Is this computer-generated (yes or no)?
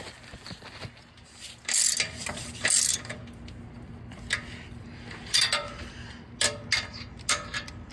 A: no